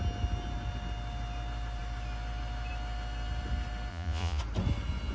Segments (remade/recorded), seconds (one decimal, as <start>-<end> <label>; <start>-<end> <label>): 0.0-3.9 recorded; 3.9-4.4 remade; 4.4-5.1 recorded